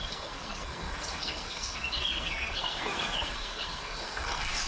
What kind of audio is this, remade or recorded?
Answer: remade